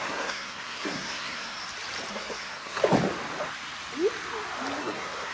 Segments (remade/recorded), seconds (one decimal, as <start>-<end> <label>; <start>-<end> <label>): 0.0-1.6 remade; 1.6-2.1 recorded; 2.1-2.8 remade; 2.8-4.8 recorded; 4.8-5.3 remade

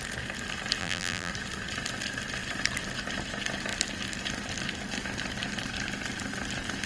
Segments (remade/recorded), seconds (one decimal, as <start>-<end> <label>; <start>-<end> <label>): 0.0-0.8 recorded; 0.8-1.3 remade; 1.3-6.9 recorded

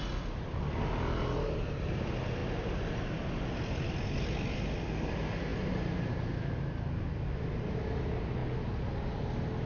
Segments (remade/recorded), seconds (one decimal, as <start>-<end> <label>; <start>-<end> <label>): 0.0-9.7 recorded

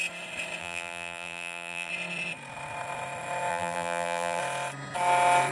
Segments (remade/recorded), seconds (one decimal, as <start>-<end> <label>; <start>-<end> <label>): 0.0-0.6 recorded; 0.6-1.9 remade; 1.9-3.5 recorded; 3.5-4.4 remade; 4.4-5.5 recorded

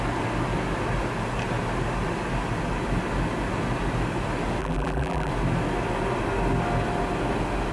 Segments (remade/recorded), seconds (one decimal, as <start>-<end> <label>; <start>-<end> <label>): 0.0-4.6 recorded; 4.6-5.3 remade; 5.3-7.7 recorded

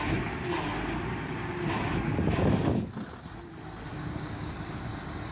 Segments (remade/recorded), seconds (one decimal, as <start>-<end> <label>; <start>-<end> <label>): 0.0-3.9 recorded; 3.9-4.5 remade; 4.5-5.3 recorded